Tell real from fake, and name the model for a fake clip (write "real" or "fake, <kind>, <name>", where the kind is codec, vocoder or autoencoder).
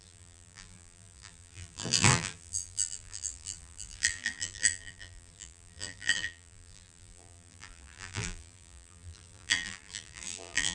fake, vocoder, BigVGAN v2